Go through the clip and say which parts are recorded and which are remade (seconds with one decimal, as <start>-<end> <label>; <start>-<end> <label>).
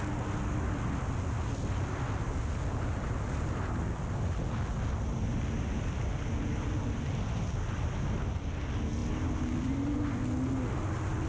0.0-11.3 recorded